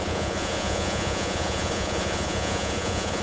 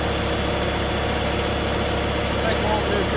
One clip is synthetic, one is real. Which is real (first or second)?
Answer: second